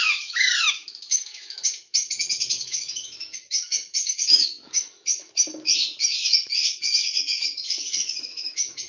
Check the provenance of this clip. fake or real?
fake